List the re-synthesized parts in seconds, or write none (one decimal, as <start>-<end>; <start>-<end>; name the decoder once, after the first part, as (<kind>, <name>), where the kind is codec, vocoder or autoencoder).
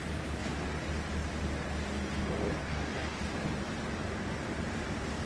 2.6-3.2 (codec, DAC)